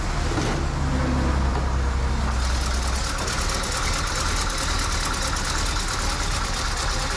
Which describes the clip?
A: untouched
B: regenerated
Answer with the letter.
A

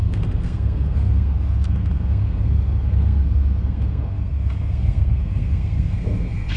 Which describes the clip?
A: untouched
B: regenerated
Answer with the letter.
B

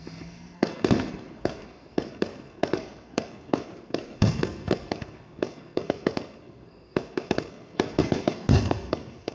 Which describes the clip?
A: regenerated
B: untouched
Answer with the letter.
A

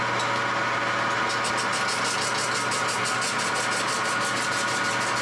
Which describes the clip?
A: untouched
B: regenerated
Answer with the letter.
A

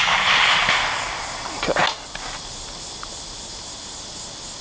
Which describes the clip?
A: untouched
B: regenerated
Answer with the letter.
A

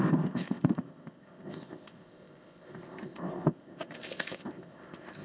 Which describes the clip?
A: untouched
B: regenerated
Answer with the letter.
B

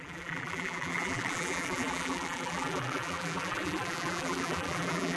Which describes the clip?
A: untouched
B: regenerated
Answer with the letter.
B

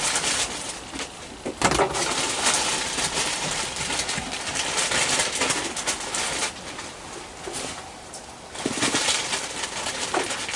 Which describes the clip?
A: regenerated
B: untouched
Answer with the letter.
B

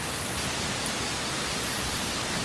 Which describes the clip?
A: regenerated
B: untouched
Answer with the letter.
B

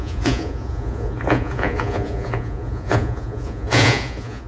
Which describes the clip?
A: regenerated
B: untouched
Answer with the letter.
A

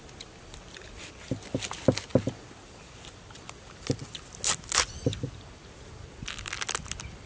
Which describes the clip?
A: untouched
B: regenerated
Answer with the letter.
A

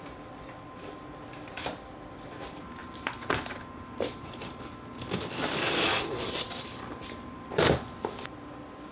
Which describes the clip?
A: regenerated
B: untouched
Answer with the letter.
A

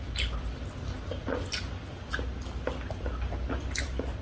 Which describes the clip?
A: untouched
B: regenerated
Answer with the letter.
A